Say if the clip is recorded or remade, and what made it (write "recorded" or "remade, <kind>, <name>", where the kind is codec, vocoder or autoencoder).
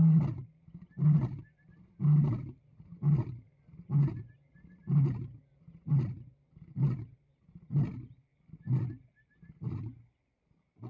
recorded